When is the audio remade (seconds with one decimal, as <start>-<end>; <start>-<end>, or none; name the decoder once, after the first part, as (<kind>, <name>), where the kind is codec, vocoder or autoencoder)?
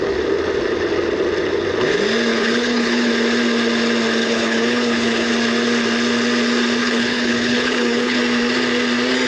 2.3-3.1 (codec, HILCodec); 4.2-5.3; 6.8-8.2